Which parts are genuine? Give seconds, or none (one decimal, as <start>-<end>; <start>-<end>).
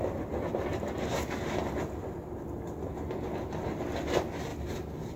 0.0-5.2